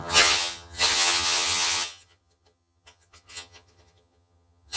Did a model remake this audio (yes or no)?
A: yes